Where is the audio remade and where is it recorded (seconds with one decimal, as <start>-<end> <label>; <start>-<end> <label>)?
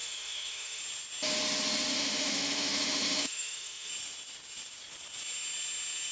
0.0-0.8 remade; 0.8-1.9 recorded; 1.9-3.9 remade; 3.9-6.1 recorded